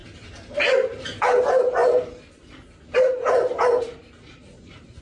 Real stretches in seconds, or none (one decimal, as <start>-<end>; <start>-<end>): 0.0-5.0